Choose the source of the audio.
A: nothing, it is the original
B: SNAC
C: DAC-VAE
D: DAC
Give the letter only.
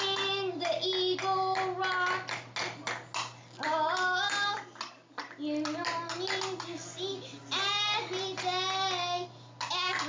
A